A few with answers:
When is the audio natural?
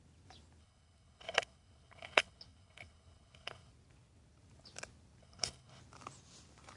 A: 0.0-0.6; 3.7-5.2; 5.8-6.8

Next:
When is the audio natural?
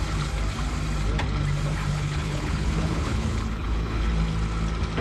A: 0.0-1.9; 4.1-5.0